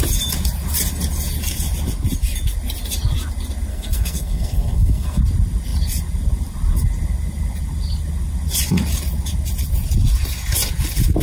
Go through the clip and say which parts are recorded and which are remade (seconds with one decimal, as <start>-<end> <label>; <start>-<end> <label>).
0.0-3.7 recorded; 3.7-5.2 remade; 5.2-11.2 recorded